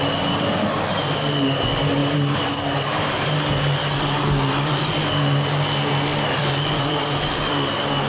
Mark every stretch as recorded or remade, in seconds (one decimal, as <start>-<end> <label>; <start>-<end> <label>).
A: 0.0-6.1 recorded; 6.1-7.0 remade; 7.0-8.1 recorded